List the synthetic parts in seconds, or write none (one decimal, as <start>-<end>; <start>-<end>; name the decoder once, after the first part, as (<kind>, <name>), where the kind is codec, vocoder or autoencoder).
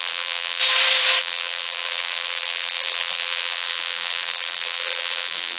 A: 0.0-0.6 (vocoder, BigVGAN v2); 1.2-5.6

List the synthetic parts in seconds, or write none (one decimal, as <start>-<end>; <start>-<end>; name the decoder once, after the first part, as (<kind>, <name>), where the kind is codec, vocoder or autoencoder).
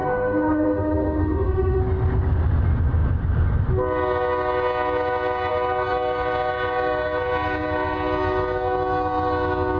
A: 0.0-1.8 (autoencoder, DAC-VAE)